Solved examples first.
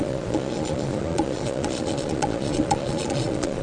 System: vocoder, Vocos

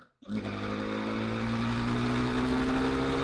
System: none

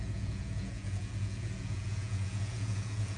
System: vocoder, Vocos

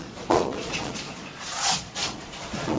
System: vocoder, Vocos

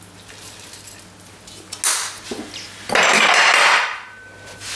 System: none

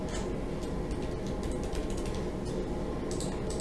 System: none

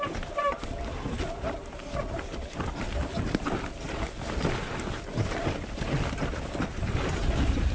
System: none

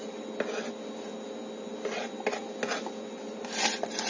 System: none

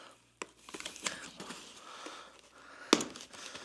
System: none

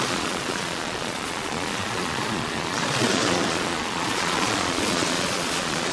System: vocoder, Vocos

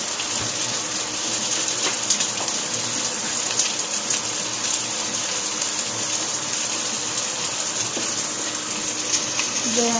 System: none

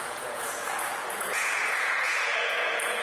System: vocoder, Vocos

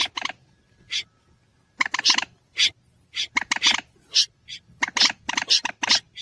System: none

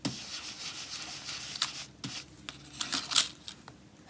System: none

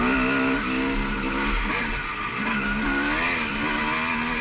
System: none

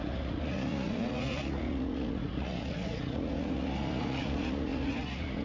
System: vocoder, Vocos